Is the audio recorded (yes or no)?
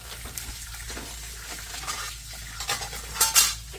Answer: yes